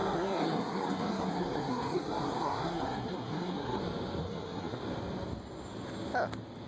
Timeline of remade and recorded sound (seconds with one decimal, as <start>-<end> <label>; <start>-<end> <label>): 0.0-3.8 remade; 3.8-4.2 recorded; 4.2-4.8 remade; 4.8-6.7 recorded